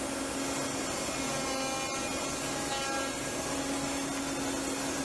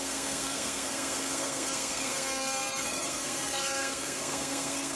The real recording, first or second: first